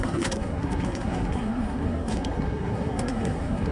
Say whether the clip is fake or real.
fake